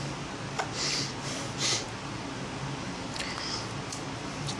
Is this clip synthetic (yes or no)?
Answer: no